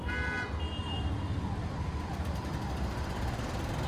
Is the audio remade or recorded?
recorded